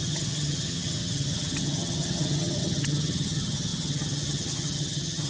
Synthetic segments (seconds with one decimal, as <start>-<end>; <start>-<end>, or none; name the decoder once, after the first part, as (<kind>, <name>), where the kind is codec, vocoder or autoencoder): 0.0-5.3 (vocoder, HiFi-GAN)